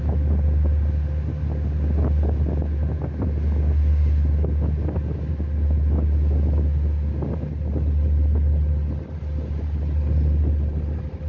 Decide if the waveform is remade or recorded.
recorded